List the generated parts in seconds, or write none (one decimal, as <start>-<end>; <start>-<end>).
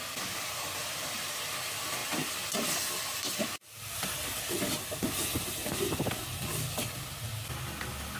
none